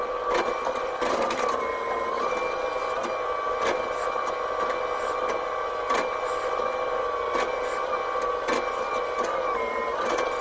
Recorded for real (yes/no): yes